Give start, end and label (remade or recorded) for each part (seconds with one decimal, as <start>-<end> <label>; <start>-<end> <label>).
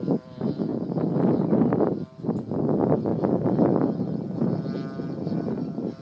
0.0-0.7 remade; 0.7-2.6 recorded; 2.6-3.1 remade; 3.1-5.5 recorded; 5.5-6.0 remade